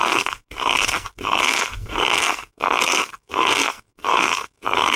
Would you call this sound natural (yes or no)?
no